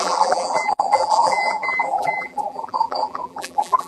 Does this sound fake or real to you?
fake